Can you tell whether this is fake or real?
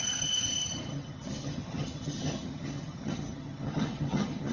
fake